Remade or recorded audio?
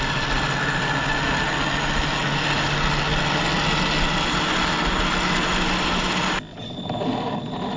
recorded